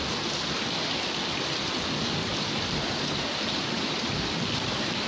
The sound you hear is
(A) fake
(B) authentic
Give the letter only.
B